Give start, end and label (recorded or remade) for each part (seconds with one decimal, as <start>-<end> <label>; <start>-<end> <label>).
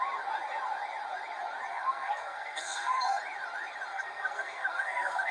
0.0-1.7 recorded; 1.7-3.2 remade; 3.2-3.9 recorded; 3.9-5.3 remade